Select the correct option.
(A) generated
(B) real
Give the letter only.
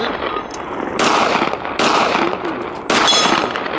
B